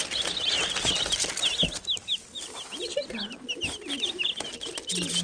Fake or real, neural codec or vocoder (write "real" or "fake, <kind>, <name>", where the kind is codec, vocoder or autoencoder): real